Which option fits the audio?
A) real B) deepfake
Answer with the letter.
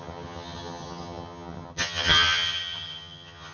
B